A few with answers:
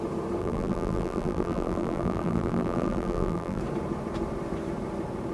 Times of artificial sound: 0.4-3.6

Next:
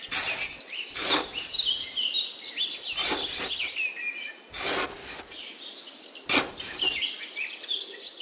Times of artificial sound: none

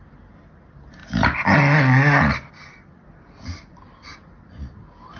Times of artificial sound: none

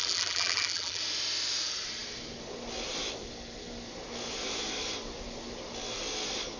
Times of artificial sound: 0.0-1.0

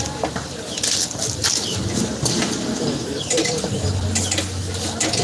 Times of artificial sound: 1.4-4.0